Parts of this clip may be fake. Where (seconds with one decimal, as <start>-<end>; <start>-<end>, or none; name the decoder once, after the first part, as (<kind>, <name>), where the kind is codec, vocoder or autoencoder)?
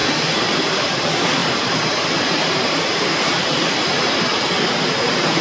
1.4-2.9 (vocoder, BigVGAN v2)